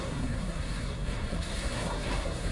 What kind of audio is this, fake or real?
fake